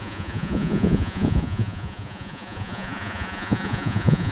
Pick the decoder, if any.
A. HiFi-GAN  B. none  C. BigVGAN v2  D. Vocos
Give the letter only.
D